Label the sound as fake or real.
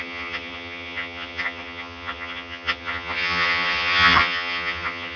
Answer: fake